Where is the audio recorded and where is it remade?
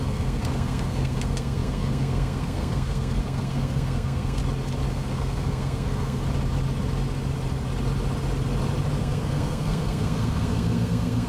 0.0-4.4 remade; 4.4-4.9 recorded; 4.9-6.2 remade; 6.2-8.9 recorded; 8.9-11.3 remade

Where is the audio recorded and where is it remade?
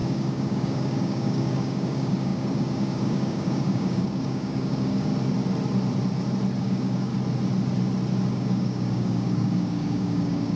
0.0-5.1 remade; 5.1-6.6 recorded; 6.6-7.1 remade; 7.1-8.3 recorded; 8.3-10.6 remade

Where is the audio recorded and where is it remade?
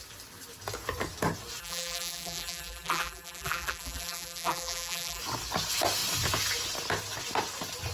0.0-1.6 recorded; 1.6-5.2 remade; 5.2-7.9 recorded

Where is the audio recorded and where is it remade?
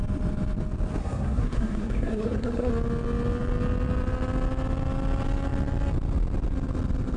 0.0-1.0 recorded; 1.0-2.7 remade; 2.7-7.2 recorded